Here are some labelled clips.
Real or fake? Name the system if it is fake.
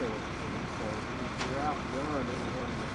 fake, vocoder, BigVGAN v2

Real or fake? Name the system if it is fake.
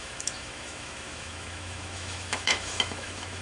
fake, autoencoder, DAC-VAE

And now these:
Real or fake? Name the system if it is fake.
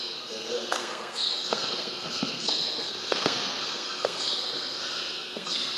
fake, codec, SNAC